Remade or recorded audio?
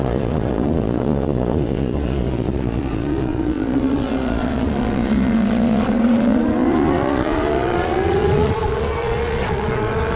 remade